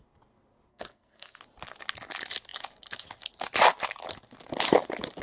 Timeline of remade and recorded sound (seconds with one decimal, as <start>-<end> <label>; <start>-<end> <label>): 0.0-0.7 recorded; 0.7-1.4 remade; 1.4-5.2 recorded